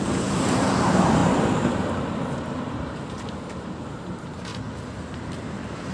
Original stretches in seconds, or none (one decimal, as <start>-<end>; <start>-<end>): 4.5-5.1